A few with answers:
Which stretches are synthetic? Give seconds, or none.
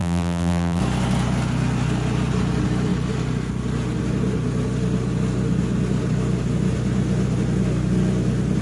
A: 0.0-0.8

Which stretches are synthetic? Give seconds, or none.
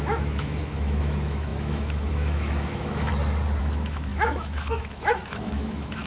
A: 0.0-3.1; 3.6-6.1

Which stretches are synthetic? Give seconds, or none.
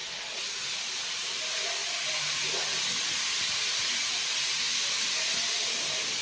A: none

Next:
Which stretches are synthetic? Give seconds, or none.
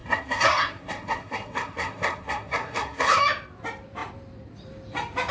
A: 0.0-3.2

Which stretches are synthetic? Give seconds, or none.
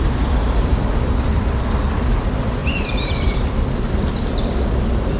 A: 2.6-3.9